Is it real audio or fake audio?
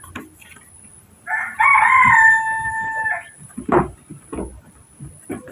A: fake